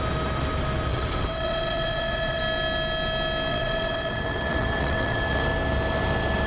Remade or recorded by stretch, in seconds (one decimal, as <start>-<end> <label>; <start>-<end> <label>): 0.0-0.9 recorded; 0.9-2.4 remade; 2.4-3.5 recorded; 3.5-5.4 remade; 5.4-6.5 recorded